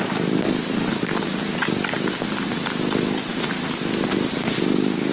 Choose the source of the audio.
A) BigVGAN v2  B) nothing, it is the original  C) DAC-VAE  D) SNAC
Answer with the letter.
A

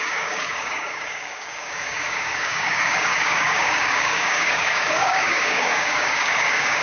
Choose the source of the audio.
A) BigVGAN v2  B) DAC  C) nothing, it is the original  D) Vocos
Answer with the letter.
B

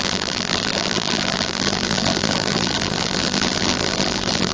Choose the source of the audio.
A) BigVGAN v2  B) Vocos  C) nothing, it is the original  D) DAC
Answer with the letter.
A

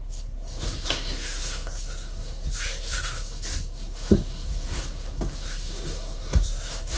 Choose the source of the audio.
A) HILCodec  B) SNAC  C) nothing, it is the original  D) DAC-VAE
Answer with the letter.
B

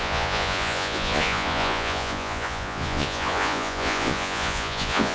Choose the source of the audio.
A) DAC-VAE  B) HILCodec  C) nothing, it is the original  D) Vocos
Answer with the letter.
D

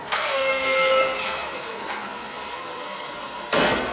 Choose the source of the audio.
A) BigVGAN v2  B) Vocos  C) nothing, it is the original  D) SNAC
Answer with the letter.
D